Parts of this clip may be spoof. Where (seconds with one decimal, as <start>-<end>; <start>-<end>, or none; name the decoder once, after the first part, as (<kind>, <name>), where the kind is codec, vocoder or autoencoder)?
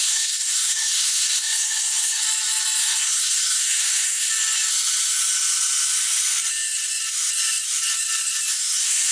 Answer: 0.0-2.2 (codec, SNAC); 2.8-4.3; 8.5-9.1